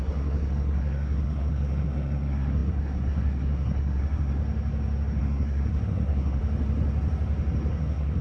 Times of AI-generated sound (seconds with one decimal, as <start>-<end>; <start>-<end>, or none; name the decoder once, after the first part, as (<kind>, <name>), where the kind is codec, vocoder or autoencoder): 0.0-4.4 (codec, SNAC); 5.2-6.4; 7.7-8.2